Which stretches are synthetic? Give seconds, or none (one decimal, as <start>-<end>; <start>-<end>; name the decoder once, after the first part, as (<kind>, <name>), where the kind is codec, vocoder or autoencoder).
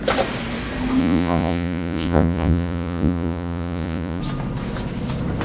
1.0-4.2 (vocoder, Vocos)